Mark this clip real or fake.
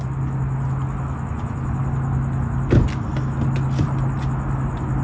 real